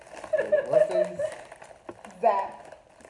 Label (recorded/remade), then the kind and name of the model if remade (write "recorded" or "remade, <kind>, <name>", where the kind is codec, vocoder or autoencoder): recorded